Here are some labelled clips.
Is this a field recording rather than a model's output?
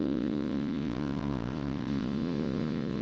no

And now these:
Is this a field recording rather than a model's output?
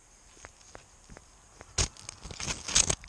yes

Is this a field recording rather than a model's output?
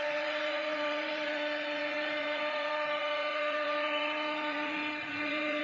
no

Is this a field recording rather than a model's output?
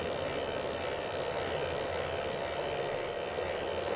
yes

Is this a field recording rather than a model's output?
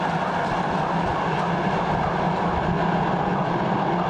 yes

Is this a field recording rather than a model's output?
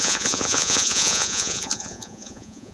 no